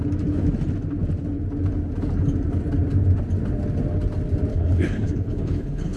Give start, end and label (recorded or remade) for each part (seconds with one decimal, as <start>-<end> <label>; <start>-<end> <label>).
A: 0.0-4.5 recorded; 4.5-6.0 remade